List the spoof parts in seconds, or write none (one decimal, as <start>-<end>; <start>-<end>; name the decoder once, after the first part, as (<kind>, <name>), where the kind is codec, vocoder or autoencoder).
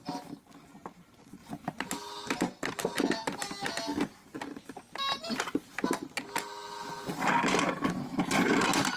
1.4-1.9 (vocoder, BigVGAN v2)